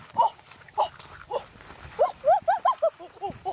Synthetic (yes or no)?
no